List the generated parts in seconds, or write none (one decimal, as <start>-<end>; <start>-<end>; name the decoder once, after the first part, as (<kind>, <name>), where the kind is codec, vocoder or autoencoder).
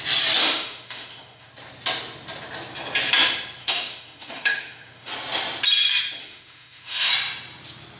0.4-1.5 (autoencoder, DAC-VAE); 3.6-5.1; 6.2-7.1